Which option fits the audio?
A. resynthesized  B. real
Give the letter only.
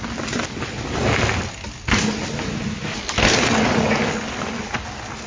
B